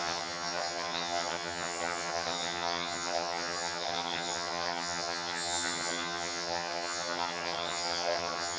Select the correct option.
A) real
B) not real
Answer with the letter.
B